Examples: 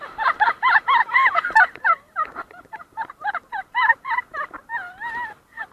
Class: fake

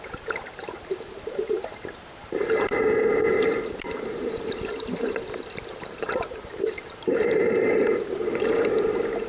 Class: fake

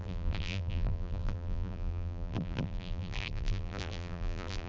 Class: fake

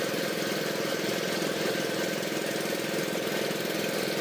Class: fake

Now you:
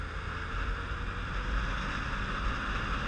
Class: real